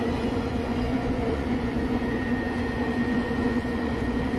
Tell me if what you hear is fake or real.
fake